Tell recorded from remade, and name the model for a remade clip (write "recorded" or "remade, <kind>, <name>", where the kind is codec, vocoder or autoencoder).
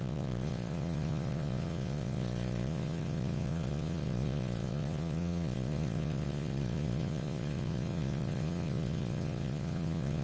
remade, vocoder, Vocos